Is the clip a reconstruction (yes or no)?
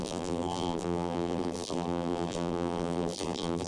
yes